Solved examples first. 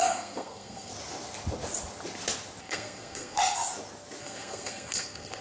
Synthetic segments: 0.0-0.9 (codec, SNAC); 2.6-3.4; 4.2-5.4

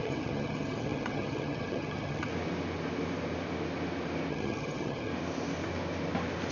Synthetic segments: 0.0-2.3 (vocoder, HiFi-GAN); 4.3-5.1

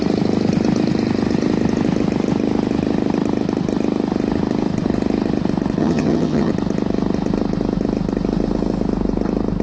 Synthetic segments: 5.8-6.5 (vocoder, HiFi-GAN)

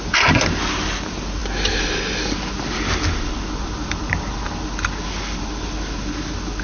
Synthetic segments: none